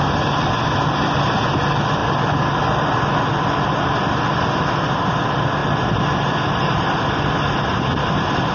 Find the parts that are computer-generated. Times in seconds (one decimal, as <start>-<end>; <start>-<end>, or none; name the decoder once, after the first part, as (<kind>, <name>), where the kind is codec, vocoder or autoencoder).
none